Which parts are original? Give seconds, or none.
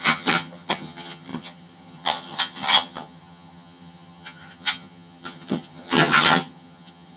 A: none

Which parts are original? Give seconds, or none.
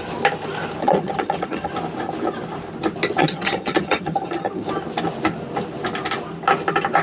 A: 0.0-0.8; 1.7-3.2; 4.7-7.0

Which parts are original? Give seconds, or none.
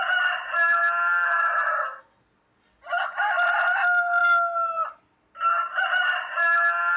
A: 0.0-7.0